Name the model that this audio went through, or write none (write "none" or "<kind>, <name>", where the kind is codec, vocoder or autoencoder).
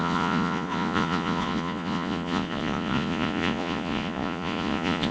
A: vocoder, Vocos